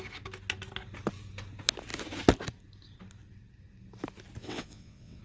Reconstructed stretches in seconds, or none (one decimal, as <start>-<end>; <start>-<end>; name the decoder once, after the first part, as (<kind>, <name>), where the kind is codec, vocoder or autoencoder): 4.4-5.2 (vocoder, WaveNeXt)

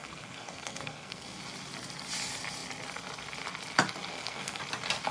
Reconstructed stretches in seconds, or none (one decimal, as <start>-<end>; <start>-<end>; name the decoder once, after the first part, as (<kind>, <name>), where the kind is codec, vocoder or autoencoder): 0.0-1.4 (codec, SNAC); 4.1-4.6

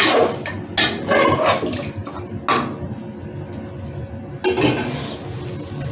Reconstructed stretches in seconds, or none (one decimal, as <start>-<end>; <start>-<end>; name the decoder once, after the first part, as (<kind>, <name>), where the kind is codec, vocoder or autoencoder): none